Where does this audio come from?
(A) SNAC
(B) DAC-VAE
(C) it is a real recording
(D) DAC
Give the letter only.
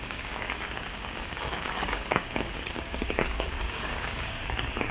D